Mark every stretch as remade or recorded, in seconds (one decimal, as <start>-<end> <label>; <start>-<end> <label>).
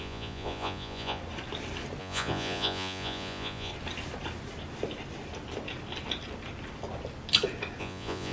0.0-1.2 remade; 1.2-2.0 recorded; 2.0-3.7 remade; 3.7-7.8 recorded; 7.8-8.3 remade